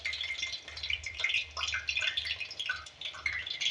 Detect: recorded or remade recorded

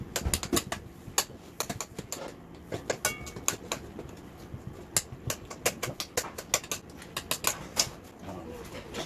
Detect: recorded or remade recorded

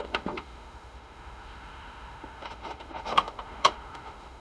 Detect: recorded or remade remade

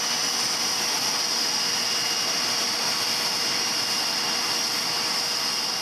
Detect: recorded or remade recorded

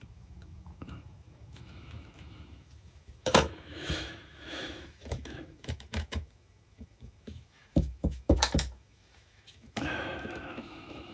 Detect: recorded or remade remade